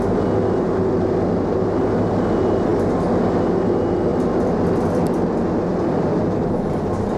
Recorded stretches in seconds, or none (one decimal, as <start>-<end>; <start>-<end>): 0.0-7.2